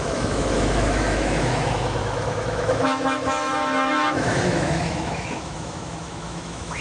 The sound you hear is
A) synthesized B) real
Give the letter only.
A